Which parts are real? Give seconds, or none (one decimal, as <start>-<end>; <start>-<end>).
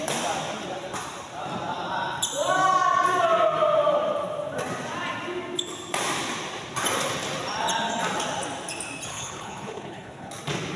0.0-9.1; 10.3-10.8